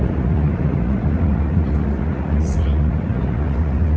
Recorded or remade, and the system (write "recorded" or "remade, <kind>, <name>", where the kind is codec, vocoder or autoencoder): remade, vocoder, Vocos